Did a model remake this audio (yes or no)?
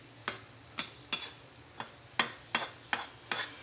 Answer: no